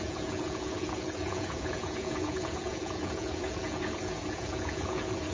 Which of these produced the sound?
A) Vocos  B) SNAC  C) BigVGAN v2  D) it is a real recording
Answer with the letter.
A